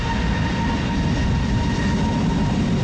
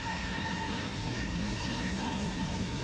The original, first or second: first